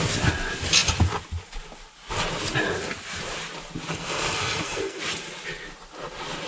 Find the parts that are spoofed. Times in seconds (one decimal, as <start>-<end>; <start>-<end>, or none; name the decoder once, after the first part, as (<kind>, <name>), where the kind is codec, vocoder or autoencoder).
3.9-5.0 (codec, SNAC)